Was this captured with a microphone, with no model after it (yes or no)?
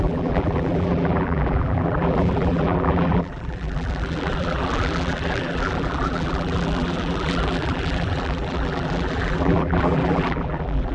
no